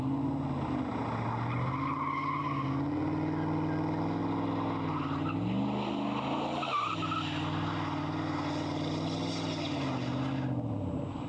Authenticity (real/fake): real